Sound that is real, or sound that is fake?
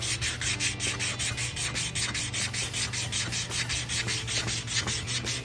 real